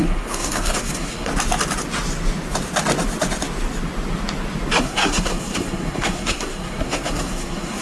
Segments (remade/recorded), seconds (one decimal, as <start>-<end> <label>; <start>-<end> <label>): 0.0-1.3 remade; 1.3-4.8 recorded; 4.8-7.8 remade